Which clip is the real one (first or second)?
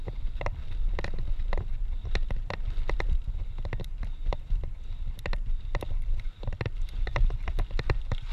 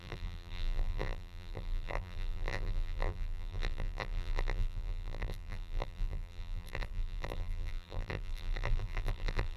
first